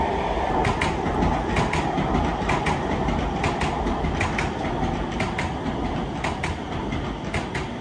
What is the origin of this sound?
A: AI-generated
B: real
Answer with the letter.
B